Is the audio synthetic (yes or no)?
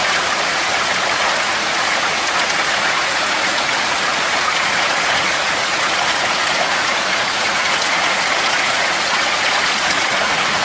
yes